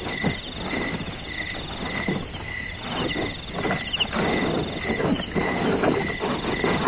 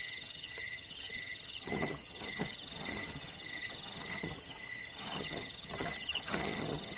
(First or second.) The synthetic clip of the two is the second